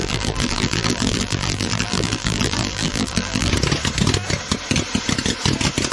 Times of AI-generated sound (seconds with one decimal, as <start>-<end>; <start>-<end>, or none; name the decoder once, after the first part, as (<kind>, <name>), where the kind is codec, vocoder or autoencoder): 0.0-3.5 (vocoder, BigVGAN v2)